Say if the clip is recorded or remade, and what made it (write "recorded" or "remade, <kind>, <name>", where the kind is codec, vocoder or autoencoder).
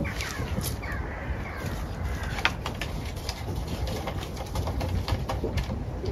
recorded